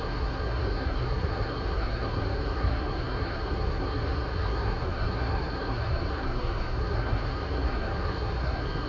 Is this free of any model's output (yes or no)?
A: no